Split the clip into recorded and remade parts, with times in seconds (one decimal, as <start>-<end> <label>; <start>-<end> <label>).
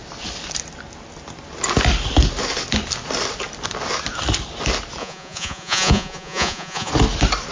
0.0-5.0 recorded; 5.0-6.9 remade; 6.9-7.5 recorded